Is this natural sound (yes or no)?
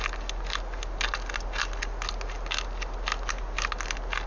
yes